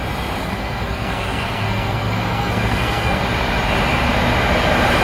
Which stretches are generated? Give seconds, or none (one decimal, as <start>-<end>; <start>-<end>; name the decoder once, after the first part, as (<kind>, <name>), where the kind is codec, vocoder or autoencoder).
0.4-3.2 (codec, SNAC)